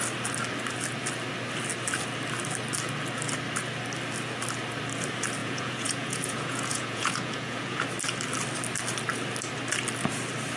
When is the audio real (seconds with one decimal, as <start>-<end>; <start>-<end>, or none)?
0.0-5.4; 7.8-10.6